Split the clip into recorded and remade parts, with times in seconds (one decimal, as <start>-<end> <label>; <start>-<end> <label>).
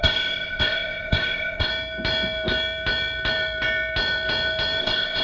0.0-1.7 remade; 1.7-4.8 recorded; 4.8-5.2 remade